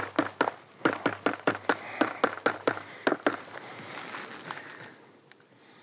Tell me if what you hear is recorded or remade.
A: recorded